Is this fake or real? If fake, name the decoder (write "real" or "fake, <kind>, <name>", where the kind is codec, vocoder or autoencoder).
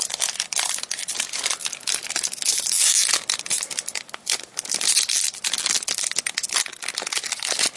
real